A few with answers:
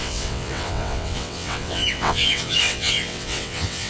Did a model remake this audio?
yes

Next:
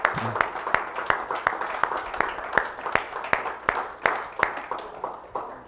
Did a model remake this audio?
no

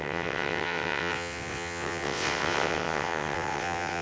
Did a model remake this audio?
yes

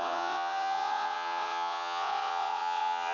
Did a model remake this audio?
yes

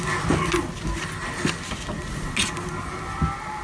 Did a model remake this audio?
no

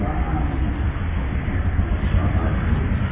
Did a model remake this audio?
no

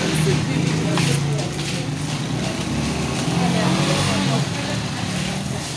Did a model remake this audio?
no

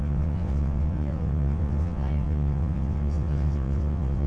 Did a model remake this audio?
yes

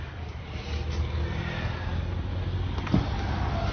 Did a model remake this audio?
no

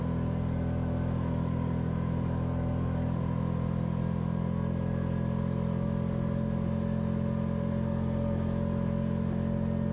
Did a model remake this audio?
no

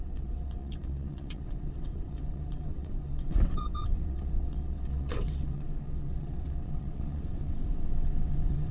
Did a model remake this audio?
yes